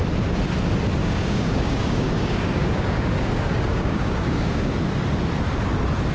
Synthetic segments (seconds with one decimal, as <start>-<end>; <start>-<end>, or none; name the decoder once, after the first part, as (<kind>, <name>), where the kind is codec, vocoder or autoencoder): 1.0-4.7 (codec, DAC)